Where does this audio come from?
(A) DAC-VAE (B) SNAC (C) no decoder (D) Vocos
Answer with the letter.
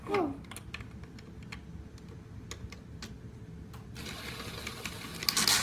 C